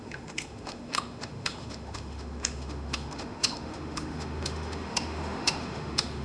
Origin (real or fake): fake